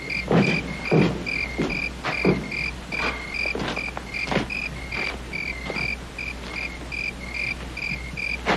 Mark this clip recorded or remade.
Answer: recorded